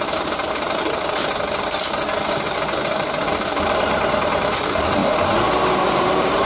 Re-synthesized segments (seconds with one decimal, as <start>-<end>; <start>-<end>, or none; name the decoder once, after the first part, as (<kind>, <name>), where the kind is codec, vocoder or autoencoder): 0.0-5.0 (vocoder, BigVGAN v2); 5.8-6.5